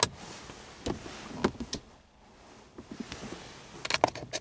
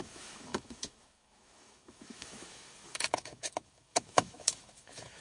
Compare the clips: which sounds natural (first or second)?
first